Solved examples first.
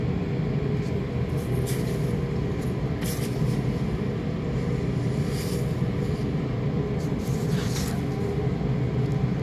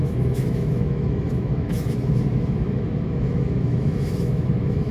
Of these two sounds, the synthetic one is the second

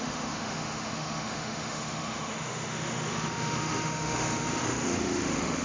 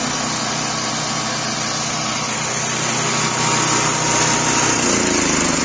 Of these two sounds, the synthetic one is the first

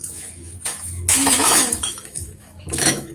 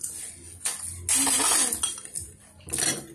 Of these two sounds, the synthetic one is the first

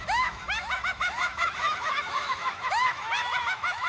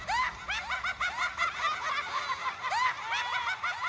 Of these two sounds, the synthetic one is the first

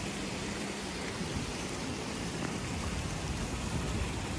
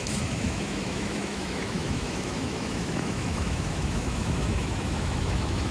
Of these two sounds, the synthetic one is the second